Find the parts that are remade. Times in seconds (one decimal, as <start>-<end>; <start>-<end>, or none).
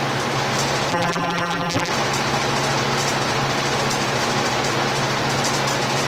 0.9-1.9